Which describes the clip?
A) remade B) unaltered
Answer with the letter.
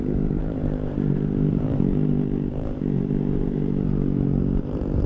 A